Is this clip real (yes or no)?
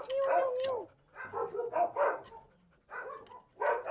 yes